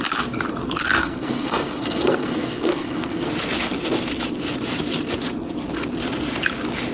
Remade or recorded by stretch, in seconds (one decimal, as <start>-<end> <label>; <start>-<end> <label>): 0.0-1.0 recorded; 1.0-3.3 remade; 3.3-6.9 recorded